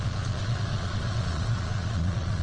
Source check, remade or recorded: remade